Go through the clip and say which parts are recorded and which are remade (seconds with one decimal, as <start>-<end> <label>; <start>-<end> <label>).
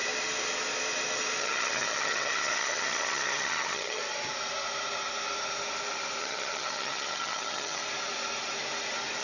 0.0-1.4 recorded; 1.4-4.0 remade; 4.0-6.2 recorded; 6.2-7.8 remade; 7.8-9.2 recorded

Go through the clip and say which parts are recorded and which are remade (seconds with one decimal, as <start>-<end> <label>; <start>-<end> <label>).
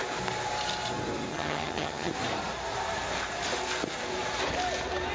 0.0-1.3 recorded; 1.3-2.1 remade; 2.1-5.1 recorded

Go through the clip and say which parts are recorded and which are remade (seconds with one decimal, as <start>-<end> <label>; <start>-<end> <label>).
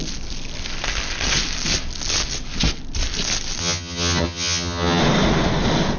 0.0-3.6 recorded; 3.6-5.0 remade; 5.0-6.0 recorded